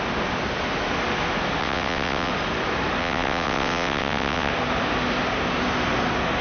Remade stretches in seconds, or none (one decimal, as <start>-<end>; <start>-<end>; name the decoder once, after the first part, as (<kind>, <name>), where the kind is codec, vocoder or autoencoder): 1.6-2.3 (vocoder, WaveNeXt); 3.0-4.5